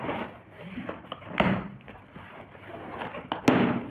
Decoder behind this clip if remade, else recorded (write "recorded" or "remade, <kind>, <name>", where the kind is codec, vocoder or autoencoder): recorded